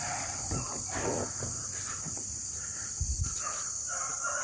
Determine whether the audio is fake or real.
real